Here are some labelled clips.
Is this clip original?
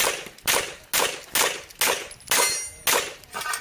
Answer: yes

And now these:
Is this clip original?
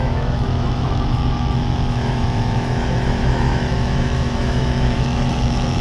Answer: no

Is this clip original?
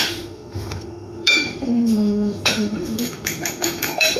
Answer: no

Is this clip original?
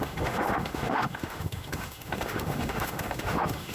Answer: no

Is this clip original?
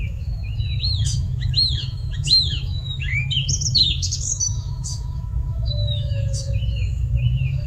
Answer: no